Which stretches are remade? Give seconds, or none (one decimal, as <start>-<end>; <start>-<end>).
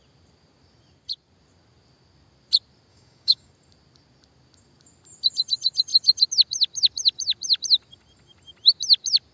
2.9-3.5